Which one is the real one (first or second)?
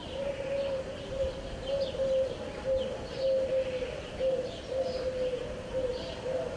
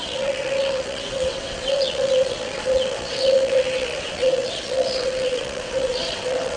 first